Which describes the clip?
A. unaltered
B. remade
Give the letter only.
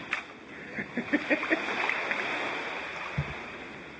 A